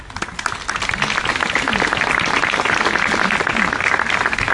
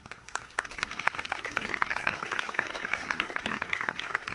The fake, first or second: second